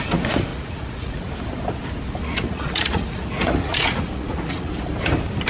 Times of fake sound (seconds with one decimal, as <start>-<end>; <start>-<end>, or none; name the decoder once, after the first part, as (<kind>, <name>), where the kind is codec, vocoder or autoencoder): 0.5-1.2 (vocoder, Vocos); 2.2-4.7